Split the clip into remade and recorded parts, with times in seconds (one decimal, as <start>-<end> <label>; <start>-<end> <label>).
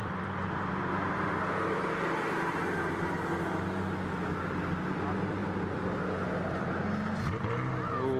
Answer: 0.0-1.4 remade; 1.4-8.2 recorded